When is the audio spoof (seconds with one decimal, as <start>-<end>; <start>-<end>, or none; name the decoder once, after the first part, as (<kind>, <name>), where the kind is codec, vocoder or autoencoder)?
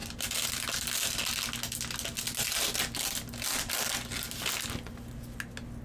none